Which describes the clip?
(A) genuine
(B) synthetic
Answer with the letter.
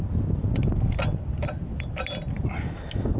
A